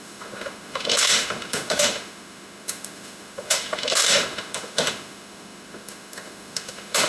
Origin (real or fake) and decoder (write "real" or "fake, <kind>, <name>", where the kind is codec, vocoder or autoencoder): fake, autoencoder, DAC-VAE